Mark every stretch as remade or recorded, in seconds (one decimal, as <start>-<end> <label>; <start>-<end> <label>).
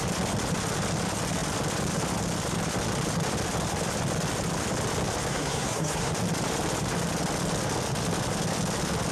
0.0-5.3 recorded; 5.3-6.1 remade; 6.1-9.1 recorded